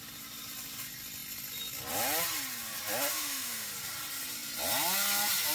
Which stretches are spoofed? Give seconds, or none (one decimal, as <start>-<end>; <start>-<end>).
3.1-3.7